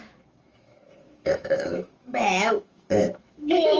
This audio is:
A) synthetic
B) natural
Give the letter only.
A